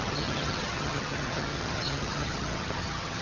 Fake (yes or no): yes